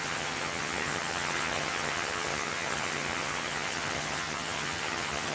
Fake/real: fake